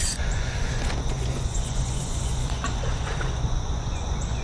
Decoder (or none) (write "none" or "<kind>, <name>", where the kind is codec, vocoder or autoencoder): vocoder, Vocos